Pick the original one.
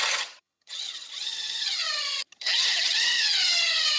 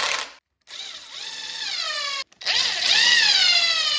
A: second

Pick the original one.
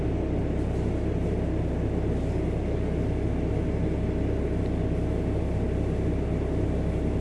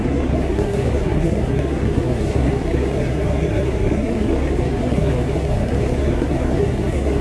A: first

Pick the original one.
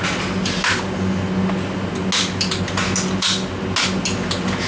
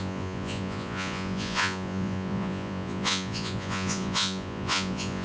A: first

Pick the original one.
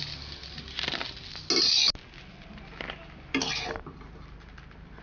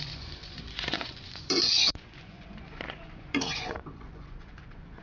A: first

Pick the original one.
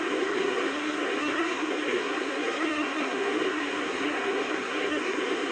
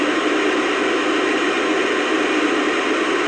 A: second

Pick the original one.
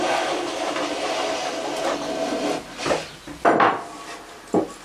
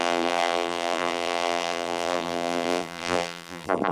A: first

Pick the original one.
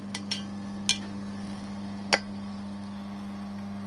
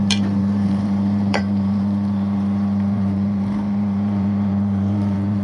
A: first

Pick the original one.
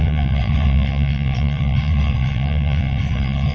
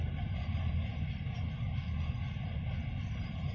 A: second